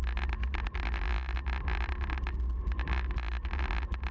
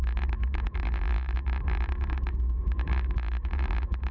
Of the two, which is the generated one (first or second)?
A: second